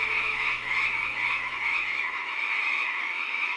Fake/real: fake